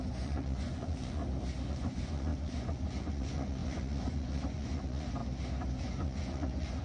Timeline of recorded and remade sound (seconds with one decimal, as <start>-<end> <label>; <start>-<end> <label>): 0.0-1.2 remade; 1.2-1.7 recorded; 1.7-5.2 remade; 5.2-5.8 recorded; 5.8-6.8 remade